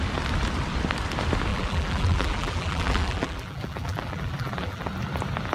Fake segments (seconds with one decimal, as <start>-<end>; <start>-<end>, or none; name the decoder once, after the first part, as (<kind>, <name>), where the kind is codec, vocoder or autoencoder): 1.5-4.8 (vocoder, BigVGAN v2)